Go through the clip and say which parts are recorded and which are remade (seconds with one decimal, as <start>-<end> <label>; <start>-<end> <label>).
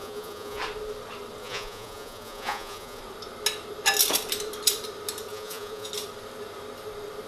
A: 0.0-0.6 remade; 0.6-1.4 recorded; 1.4-3.0 remade; 3.0-5.3 recorded; 5.3-5.9 remade; 5.9-7.3 recorded